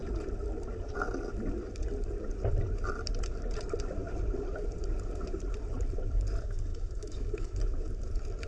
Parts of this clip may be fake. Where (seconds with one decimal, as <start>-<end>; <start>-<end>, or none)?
6.7-7.6